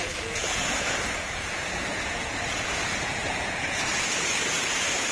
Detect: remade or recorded remade